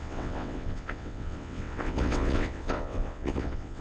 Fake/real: fake